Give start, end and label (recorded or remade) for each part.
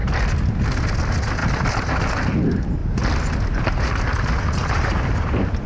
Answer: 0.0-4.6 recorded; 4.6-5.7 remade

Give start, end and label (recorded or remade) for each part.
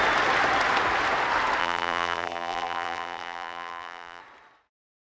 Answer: 0.0-1.6 recorded; 1.6-4.2 remade; 4.2-5.0 recorded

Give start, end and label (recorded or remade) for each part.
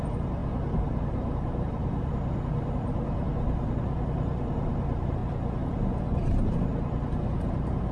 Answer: 0.0-3.3 remade; 3.3-3.8 recorded; 3.8-5.2 remade; 5.2-6.5 recorded; 6.5-7.9 remade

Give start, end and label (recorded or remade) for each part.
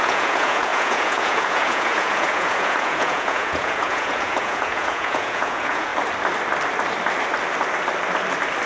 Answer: 0.0-5.9 remade; 5.9-8.7 recorded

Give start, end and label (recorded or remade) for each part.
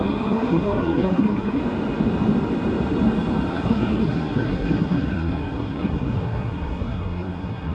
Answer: 0.0-1.6 remade; 1.6-3.5 recorded; 3.5-7.7 remade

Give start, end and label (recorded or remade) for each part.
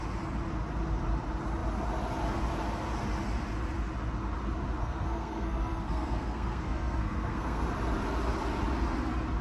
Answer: 0.0-4.8 recorded; 4.8-7.6 remade; 7.6-9.4 recorded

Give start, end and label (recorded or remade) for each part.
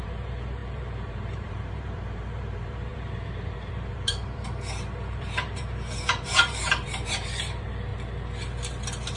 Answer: 0.0-7.9 remade; 7.9-9.2 recorded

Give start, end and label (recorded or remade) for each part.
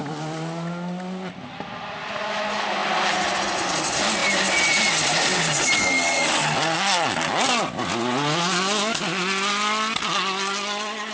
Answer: 0.0-11.1 recorded